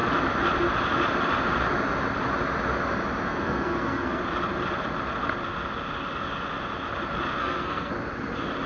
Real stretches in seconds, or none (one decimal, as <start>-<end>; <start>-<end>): 0.0-3.3; 4.2-7.4; 7.9-8.7